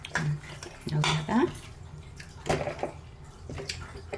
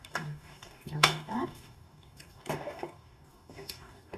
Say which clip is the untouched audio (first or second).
first